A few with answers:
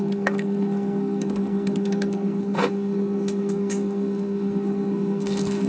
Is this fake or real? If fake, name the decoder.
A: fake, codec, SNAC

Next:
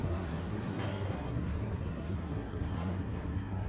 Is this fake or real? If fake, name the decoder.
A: fake, codec, SNAC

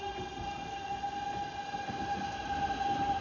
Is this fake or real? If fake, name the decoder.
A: real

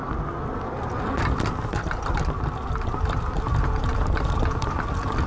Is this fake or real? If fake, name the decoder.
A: real